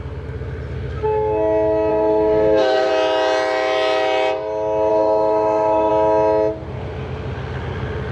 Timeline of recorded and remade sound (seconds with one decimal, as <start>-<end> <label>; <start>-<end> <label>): 0.0-1.9 recorded; 1.9-2.9 remade; 2.9-4.9 recorded; 4.9-5.9 remade; 5.9-8.1 recorded